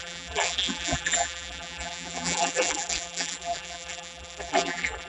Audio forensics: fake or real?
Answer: fake